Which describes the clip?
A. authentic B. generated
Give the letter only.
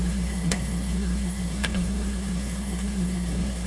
B